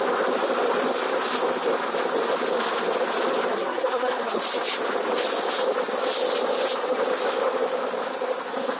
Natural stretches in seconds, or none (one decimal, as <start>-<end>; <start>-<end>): 0.0-3.5; 4.4-8.8